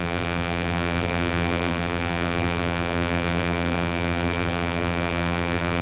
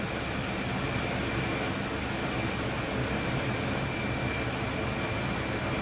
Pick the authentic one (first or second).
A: second